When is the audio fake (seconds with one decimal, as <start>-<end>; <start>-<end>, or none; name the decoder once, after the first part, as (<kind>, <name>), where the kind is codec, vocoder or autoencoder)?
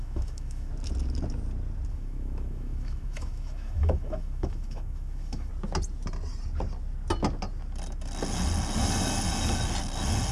0.0-0.7 (autoencoder, DAC-VAE); 1.9-5.5